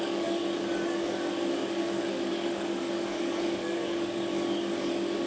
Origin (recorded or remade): remade